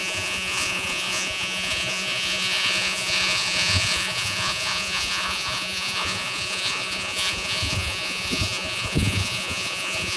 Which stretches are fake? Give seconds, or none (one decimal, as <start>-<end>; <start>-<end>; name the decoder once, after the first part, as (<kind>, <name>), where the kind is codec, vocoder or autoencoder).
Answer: 0.0-10.2 (vocoder, Vocos)